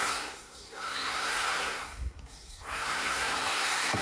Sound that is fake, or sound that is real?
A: fake